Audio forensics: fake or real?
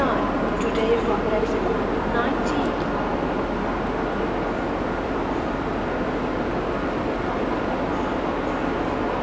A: real